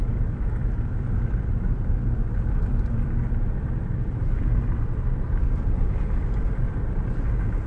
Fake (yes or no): yes